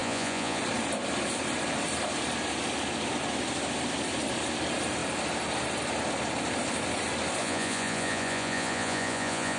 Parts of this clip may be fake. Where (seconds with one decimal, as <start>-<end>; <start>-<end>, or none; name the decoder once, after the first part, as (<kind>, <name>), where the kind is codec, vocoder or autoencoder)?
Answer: 0.0-0.6 (vocoder, Vocos); 7.4-9.6